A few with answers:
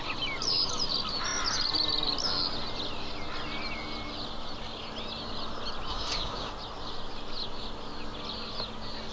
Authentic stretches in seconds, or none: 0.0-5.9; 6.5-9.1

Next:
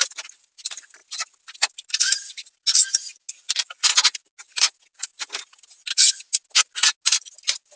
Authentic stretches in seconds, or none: 0.0-7.8

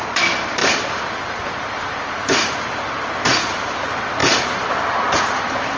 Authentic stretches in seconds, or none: 0.0-0.6; 2.6-5.8

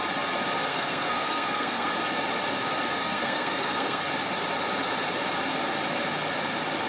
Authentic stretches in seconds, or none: 0.0-0.7; 1.9-3.0; 4.0-6.9

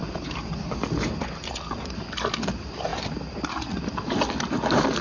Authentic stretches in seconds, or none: 0.0-5.0

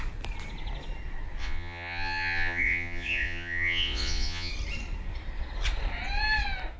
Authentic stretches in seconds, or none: 0.0-1.4; 4.5-6.8